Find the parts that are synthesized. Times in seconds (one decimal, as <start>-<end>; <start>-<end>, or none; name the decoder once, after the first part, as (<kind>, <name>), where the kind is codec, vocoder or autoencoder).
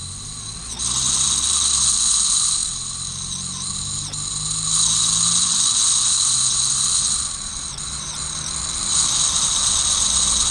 none